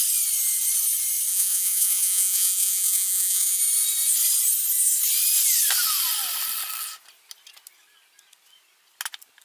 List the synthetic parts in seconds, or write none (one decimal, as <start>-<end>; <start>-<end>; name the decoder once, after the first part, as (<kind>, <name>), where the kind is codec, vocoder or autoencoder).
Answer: 1.3-3.6 (vocoder, Vocos)